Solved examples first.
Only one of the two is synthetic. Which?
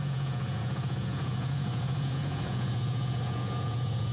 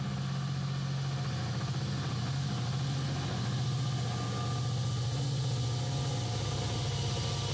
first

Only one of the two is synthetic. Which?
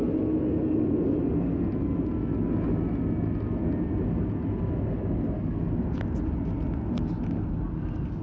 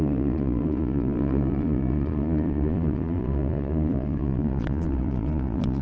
second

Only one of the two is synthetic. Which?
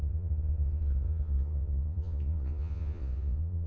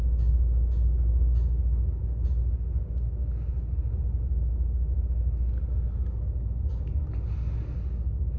first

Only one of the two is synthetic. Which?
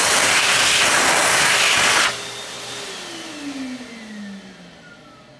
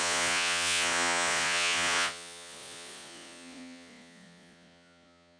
second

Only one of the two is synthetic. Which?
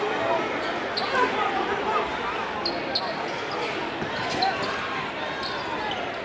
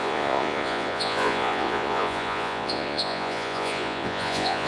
second